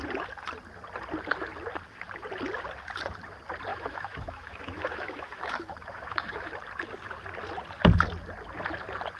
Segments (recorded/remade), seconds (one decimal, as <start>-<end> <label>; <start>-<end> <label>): 0.0-3.7 recorded; 3.7-6.5 remade; 6.5-9.2 recorded